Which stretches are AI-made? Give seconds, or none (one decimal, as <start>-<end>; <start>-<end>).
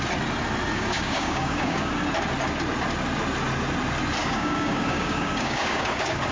0.7-1.9; 4.2-6.3